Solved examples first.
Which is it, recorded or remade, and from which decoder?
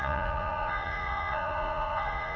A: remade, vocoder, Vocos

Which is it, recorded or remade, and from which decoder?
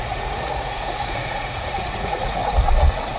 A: remade, vocoder, Vocos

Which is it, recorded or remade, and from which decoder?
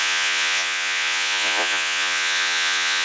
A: remade, vocoder, Vocos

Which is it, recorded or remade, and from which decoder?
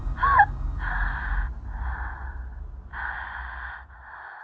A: recorded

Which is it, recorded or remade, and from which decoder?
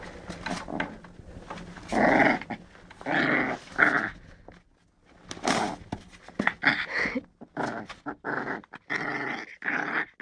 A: recorded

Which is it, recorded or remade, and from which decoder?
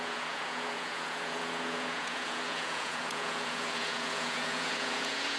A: remade, vocoder, Vocos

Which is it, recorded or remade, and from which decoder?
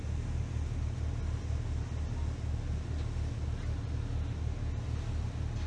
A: recorded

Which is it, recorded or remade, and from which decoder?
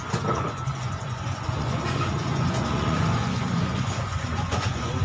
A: remade, vocoder, Vocos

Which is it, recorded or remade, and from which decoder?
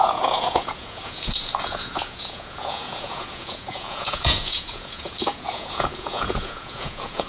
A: remade, vocoder, Vocos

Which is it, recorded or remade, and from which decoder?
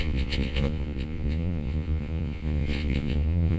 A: remade, vocoder, Vocos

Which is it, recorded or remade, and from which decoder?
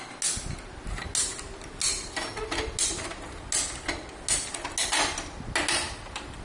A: recorded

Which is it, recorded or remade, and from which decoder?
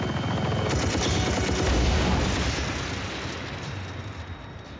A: recorded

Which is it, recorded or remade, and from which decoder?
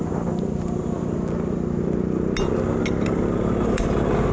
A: recorded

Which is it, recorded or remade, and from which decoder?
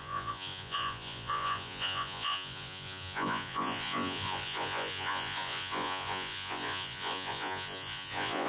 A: remade, vocoder, Vocos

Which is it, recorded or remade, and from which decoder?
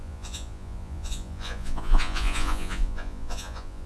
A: remade, vocoder, Vocos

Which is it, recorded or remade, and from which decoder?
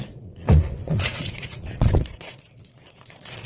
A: remade, vocoder, Vocos